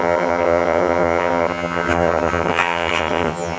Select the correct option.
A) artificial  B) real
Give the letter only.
A